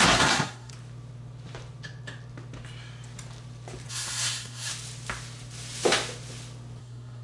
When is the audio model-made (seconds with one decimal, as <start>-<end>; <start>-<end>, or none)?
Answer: 0.0-0.7; 3.9-4.7; 6.8-7.2